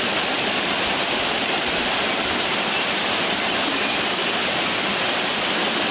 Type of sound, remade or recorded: recorded